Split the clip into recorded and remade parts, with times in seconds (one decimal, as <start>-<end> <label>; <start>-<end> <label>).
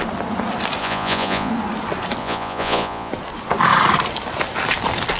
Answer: 0.0-0.8 recorded; 0.8-1.5 remade; 1.5-2.2 recorded; 2.2-3.1 remade; 3.1-5.2 recorded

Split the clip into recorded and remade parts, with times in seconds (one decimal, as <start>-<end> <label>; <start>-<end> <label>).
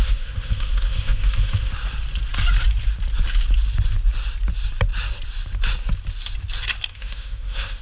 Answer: 0.0-1.7 remade; 1.7-6.9 recorded; 6.9-7.8 remade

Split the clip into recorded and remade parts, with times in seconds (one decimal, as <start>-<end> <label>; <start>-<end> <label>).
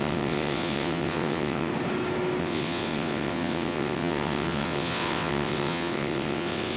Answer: 0.0-1.7 remade; 1.7-2.4 recorded; 2.4-6.8 remade